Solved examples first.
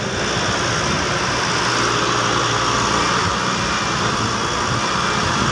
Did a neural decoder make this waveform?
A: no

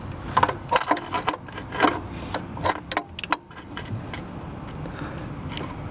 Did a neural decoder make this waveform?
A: no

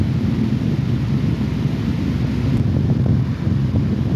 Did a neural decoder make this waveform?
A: no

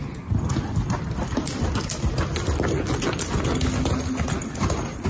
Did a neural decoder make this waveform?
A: no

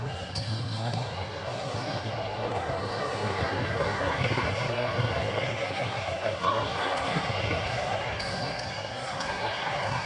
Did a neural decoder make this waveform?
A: yes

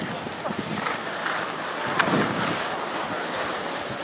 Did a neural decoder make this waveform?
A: no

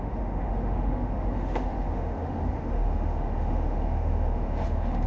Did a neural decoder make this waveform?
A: yes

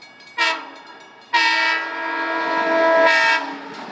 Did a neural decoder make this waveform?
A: no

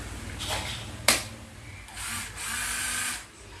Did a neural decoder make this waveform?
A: no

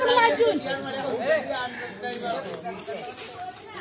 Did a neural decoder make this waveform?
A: no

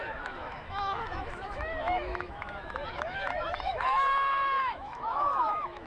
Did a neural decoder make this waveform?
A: yes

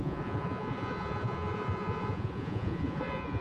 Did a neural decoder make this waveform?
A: yes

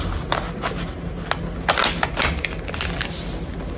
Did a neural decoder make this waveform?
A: no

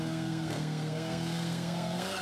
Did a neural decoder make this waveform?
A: yes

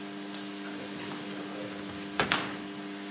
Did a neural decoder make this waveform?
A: no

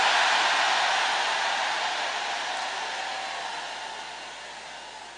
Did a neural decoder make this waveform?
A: no